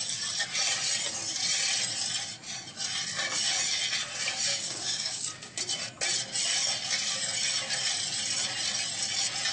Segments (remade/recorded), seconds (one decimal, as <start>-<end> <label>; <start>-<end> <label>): 0.0-4.5 recorded; 4.5-5.6 remade; 5.6-9.5 recorded